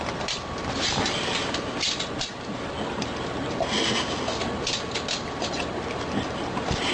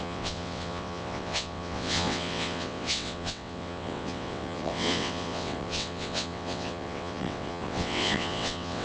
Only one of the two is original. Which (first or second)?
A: first